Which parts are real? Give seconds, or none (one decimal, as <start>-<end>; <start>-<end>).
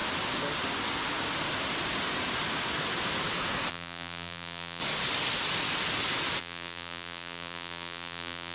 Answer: 0.0-3.7; 4.8-6.4